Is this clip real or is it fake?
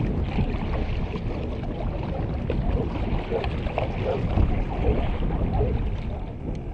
real